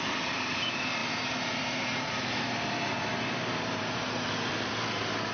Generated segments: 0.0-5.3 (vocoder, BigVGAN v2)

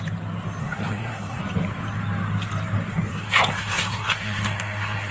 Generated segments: 0.6-1.4 (codec, SNAC); 2.9-5.1

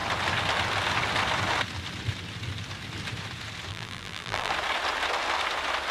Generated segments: 3.7-4.5 (vocoder, BigVGAN v2)

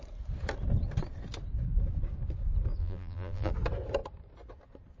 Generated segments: 2.8-3.5 (vocoder, BigVGAN v2)

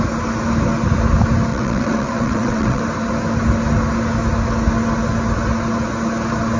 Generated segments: 1.5-2.8 (vocoder, WaveNeXt)